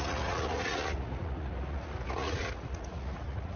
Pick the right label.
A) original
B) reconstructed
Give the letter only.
B